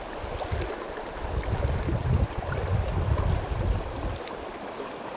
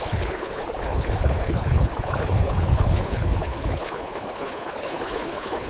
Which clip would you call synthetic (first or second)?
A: second